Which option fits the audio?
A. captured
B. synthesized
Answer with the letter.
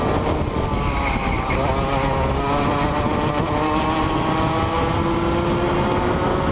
A